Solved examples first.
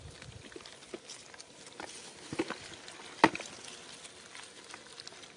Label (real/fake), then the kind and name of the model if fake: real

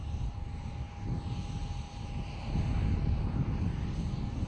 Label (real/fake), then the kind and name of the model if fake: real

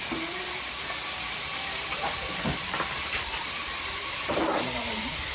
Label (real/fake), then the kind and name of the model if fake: fake, vocoder, BigVGAN v2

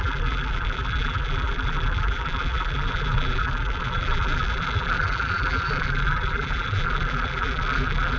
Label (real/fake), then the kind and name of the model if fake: fake, vocoder, BigVGAN v2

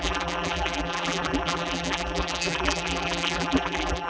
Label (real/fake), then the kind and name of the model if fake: fake, vocoder, BigVGAN v2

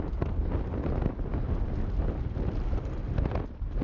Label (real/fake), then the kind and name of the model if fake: real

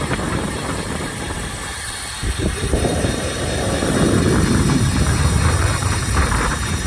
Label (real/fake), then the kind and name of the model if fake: fake, vocoder, BigVGAN v2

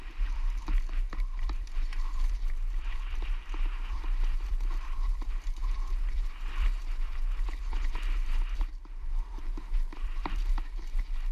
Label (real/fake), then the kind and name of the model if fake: fake, vocoder, BigVGAN v2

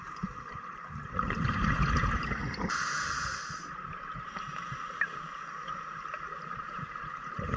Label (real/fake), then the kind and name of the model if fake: fake, vocoder, BigVGAN v2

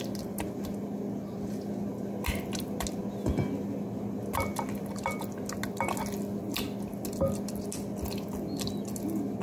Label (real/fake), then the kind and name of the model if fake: real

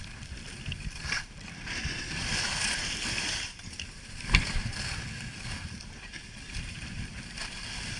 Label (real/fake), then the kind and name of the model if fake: fake, vocoder, BigVGAN v2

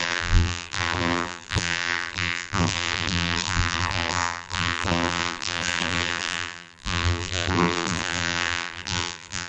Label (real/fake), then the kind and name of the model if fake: fake, vocoder, BigVGAN v2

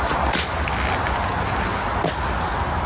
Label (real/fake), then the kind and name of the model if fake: real